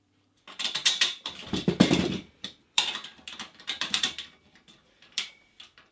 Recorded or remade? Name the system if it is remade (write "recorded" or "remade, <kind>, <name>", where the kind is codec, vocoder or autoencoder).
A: remade, vocoder, BigVGAN v2